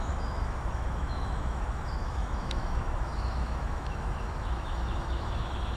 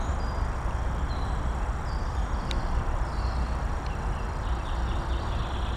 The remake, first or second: first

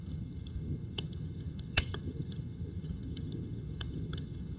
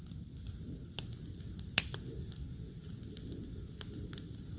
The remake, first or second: first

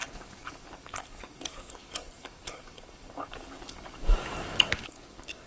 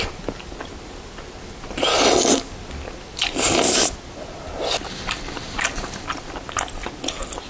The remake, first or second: first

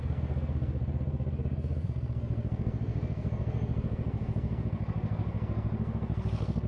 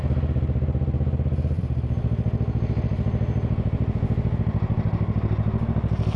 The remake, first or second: first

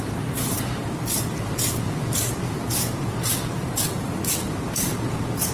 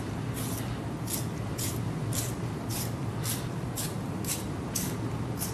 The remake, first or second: first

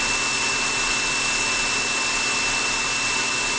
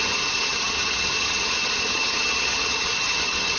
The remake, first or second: second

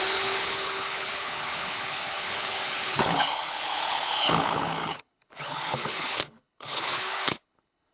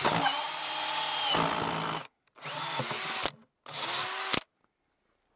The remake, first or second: first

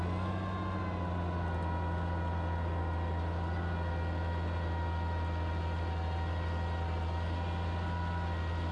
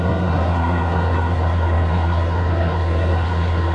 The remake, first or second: second